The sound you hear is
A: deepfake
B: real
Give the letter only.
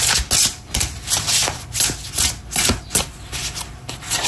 B